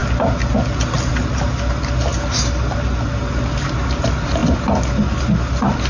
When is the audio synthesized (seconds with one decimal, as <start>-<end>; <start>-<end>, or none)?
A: none